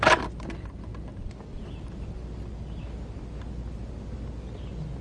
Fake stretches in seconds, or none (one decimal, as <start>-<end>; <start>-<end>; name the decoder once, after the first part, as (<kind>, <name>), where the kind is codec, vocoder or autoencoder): 1.1-1.6 (vocoder, BigVGAN v2)